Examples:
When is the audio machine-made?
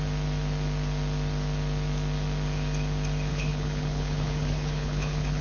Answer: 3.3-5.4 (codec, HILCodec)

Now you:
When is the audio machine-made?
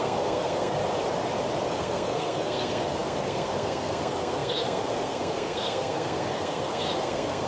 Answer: 0.0-0.8 (codec, SNAC); 1.7-7.5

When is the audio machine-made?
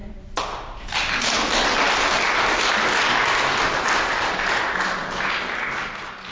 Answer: none